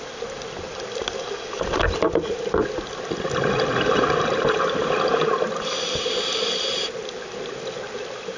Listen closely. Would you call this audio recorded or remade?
recorded